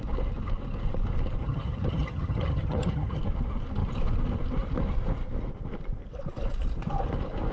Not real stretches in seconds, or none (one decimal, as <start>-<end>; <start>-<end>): 1.4-3.2